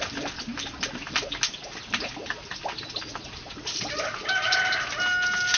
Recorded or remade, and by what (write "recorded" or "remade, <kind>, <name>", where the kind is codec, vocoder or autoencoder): recorded